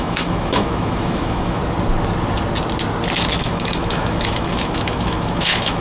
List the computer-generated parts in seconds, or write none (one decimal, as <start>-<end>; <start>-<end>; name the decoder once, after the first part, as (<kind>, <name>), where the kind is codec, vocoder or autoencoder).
0.0-1.6 (autoencoder, DAC-VAE); 3.3-5.8